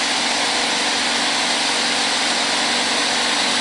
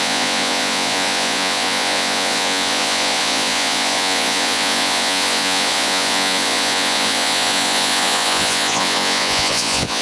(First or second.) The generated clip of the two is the second